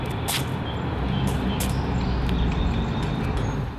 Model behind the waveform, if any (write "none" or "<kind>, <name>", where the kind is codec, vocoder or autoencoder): none